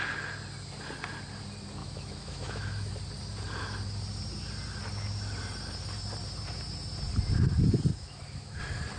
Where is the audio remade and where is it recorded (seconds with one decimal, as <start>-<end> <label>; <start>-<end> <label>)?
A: 0.0-1.8 recorded; 1.8-2.9 remade; 2.9-7.9 recorded; 7.9-8.6 remade; 8.6-9.0 recorded